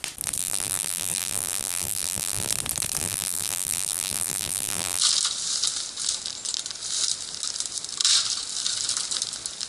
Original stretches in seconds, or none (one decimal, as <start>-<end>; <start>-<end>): 0.0-0.4; 2.5-3.0; 5.0-9.7